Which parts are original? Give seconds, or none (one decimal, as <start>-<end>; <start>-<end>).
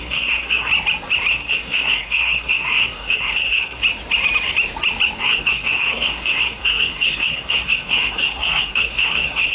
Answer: 0.7-1.3; 3.8-5.2